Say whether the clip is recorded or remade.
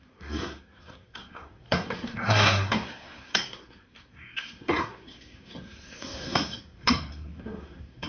remade